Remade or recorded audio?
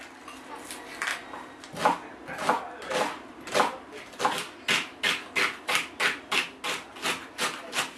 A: recorded